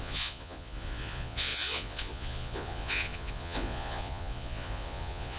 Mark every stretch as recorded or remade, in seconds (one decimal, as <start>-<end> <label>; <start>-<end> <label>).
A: 0.0-5.4 remade